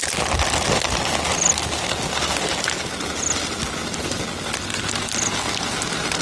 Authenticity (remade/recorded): recorded